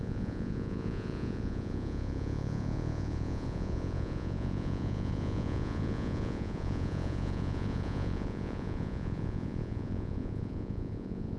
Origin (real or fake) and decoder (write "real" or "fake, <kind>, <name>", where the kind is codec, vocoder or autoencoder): fake, vocoder, Vocos